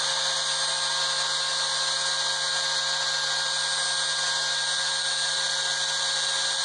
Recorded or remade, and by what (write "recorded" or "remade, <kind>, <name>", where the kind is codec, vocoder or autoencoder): recorded